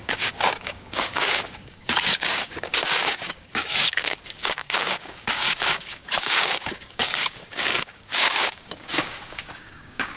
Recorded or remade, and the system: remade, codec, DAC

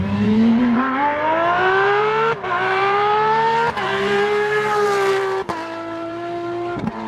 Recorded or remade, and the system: remade, vocoder, BigVGAN v2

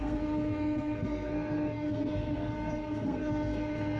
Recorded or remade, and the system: remade, codec, SNAC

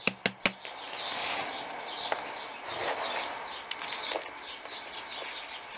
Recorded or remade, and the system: recorded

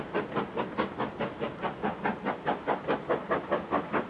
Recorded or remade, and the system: recorded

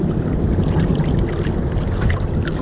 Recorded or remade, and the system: recorded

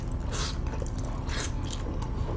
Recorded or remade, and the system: recorded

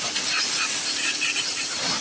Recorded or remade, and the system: recorded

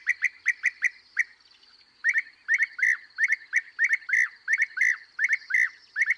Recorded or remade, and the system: recorded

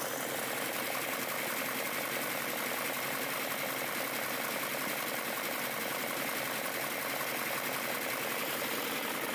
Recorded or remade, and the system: recorded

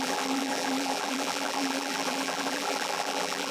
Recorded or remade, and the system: remade, vocoder, BigVGAN v2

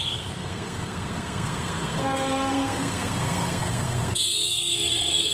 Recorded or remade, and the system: remade, codec, SNAC